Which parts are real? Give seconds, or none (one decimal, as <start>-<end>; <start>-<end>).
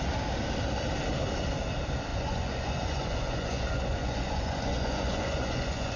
0.0-2.1